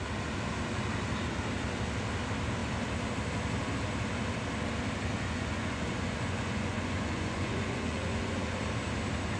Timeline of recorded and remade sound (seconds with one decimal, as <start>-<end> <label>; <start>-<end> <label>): 0.0-5.1 recorded; 5.1-8.6 remade; 8.6-9.4 recorded